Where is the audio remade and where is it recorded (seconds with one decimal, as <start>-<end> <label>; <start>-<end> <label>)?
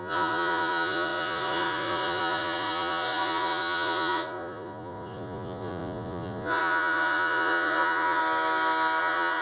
0.0-8.2 remade; 8.2-9.0 recorded; 9.0-9.4 remade